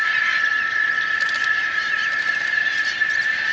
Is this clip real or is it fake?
real